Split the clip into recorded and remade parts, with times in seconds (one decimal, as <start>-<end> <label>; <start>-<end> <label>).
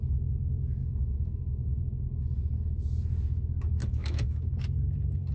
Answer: 0.0-0.8 recorded; 0.8-1.8 remade; 1.8-3.8 recorded; 3.8-4.5 remade; 4.5-5.3 recorded